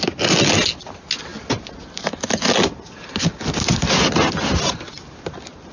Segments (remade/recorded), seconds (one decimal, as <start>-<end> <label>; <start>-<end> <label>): 0.0-5.7 recorded